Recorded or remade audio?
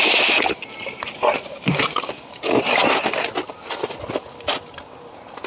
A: remade